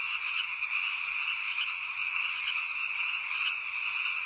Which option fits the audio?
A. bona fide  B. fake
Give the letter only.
B